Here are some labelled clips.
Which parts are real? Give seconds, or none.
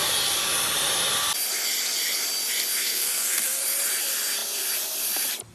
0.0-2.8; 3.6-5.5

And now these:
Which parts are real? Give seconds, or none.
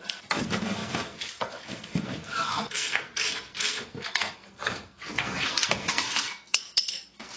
none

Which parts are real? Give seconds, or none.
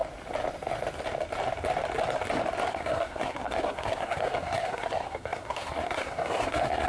0.0-2.7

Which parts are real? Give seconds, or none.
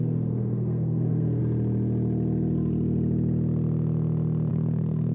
1.4-4.5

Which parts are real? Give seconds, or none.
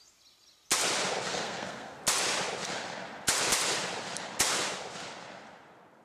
0.0-1.3; 2.0-6.0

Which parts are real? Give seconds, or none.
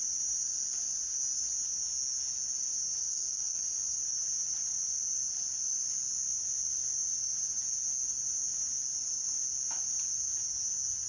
0.0-3.1; 3.6-11.1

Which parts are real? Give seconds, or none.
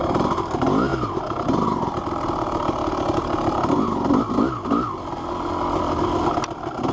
0.0-6.9